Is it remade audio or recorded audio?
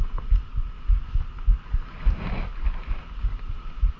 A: recorded